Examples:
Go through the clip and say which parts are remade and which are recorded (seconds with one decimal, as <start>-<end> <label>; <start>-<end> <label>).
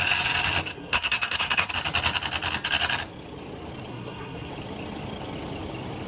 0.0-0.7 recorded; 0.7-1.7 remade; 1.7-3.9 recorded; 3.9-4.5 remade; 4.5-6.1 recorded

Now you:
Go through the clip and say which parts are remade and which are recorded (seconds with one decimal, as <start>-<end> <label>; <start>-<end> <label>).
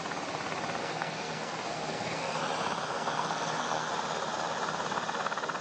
0.0-0.8 recorded; 0.8-2.4 remade; 2.4-2.9 recorded; 2.9-3.9 remade; 3.9-5.6 recorded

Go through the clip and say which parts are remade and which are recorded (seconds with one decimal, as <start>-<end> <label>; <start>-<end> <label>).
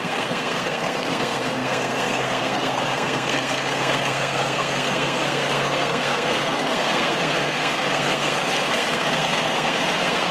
0.0-10.3 remade